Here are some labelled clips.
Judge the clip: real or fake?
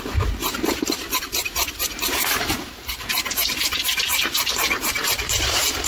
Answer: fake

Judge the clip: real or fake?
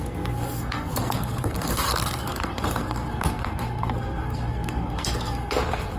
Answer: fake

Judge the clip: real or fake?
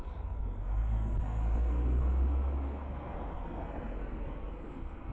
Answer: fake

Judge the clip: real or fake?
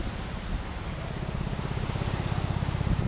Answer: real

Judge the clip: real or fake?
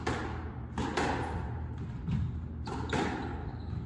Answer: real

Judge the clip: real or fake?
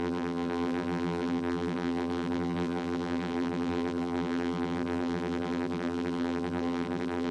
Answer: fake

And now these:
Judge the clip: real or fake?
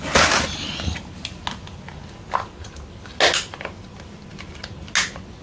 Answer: real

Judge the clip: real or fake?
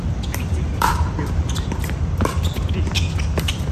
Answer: fake